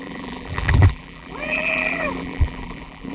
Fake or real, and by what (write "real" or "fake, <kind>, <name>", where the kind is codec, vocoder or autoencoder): fake, vocoder, BigVGAN v2